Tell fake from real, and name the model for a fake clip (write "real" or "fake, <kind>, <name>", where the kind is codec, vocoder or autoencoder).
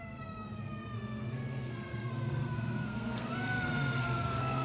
fake, codec, SNAC